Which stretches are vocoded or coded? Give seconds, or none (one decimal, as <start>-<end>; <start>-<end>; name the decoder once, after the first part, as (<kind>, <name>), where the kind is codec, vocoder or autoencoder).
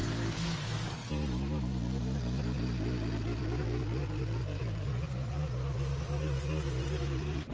none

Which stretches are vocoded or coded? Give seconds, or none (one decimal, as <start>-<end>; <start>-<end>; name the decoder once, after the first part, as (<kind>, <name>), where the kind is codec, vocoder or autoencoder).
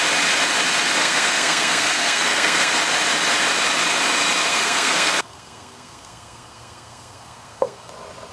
1.0-2.7 (codec, SNAC); 4.5-7.9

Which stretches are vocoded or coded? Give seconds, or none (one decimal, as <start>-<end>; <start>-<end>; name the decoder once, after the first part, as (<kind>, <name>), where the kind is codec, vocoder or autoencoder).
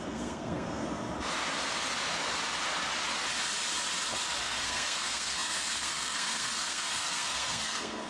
0.0-0.8 (codec, SNAC); 4.4-8.1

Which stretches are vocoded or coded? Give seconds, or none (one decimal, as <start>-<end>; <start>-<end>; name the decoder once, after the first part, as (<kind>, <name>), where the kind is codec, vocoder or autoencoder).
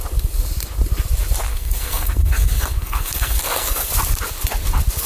1.5-3.9 (codec, SNAC)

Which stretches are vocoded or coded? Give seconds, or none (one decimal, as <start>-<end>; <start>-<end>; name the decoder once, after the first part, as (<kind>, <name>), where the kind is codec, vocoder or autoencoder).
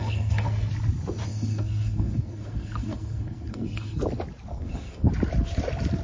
0.0-0.7 (codec, SNAC); 1.3-4.0; 4.5-5.1